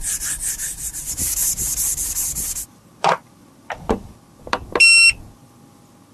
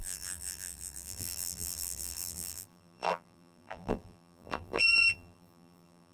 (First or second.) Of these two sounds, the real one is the first